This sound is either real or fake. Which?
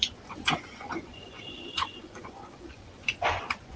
fake